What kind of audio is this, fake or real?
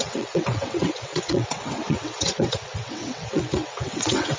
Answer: fake